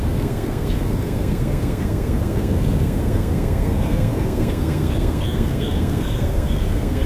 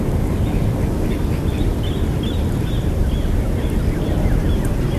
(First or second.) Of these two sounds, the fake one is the first